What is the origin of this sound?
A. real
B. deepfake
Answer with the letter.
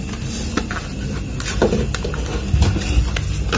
A